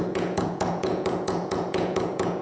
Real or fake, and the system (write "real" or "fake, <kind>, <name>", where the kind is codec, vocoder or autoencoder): fake, vocoder, Vocos